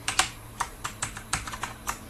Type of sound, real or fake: fake